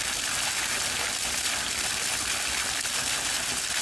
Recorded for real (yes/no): yes